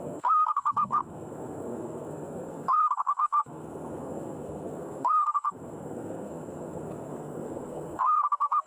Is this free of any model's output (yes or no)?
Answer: no